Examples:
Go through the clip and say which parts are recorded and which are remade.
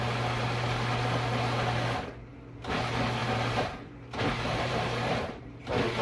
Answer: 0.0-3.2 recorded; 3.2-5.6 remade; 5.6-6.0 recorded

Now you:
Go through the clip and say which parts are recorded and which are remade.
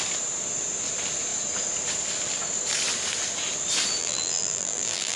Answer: 0.0-4.0 recorded; 4.0-5.2 remade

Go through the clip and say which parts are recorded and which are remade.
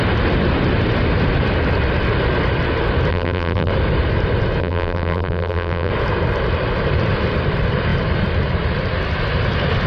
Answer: 0.0-3.1 recorded; 3.1-3.7 remade; 3.7-4.6 recorded; 4.6-5.9 remade; 5.9-9.9 recorded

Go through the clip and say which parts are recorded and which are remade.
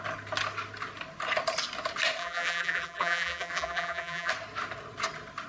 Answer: 0.0-2.2 recorded; 2.2-4.3 remade; 4.3-5.5 recorded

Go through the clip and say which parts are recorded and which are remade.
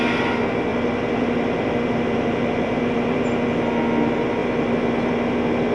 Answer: 0.0-0.7 recorded; 0.7-3.3 remade; 3.3-4.4 recorded; 4.4-5.1 remade; 5.1-5.7 recorded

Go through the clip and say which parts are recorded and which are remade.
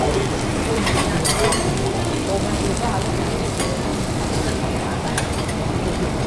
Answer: 0.0-0.5 recorded; 0.5-1.7 remade; 1.7-3.9 recorded; 3.9-5.5 remade; 5.5-6.3 recorded